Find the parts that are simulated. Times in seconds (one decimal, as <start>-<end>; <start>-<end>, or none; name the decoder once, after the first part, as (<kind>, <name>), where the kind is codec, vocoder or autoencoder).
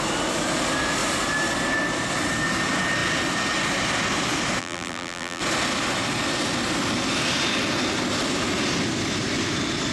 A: 4.6-5.4 (vocoder, BigVGAN v2)